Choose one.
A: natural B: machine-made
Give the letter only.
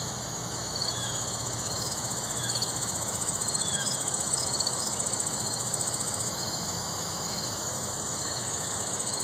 B